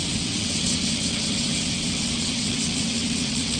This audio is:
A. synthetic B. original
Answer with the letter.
A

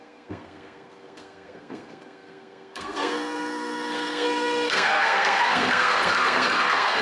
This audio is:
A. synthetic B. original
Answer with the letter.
A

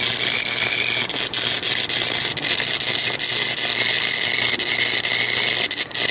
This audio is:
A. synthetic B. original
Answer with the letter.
B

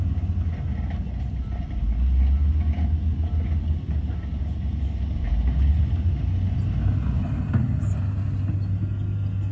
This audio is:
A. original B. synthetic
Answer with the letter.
A